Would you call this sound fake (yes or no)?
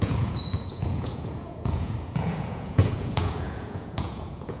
yes